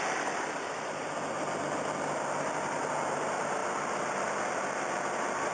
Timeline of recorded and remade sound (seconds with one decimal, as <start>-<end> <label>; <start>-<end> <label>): 0.0-5.5 recorded